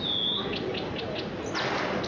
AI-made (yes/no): no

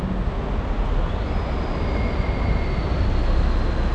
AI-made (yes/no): no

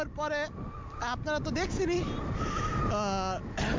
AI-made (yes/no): no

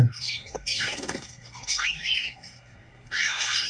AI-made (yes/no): yes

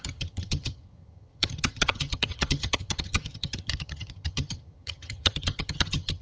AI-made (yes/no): yes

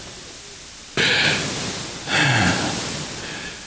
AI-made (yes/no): no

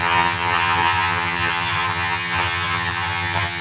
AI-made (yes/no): yes